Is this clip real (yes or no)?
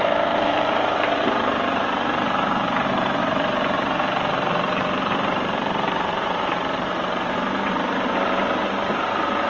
no